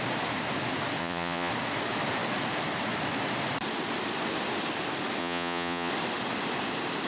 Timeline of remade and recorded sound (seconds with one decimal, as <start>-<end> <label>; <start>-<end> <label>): 0.0-1.0 recorded; 1.0-1.5 remade; 1.5-5.2 recorded; 5.2-5.9 remade; 5.9-7.1 recorded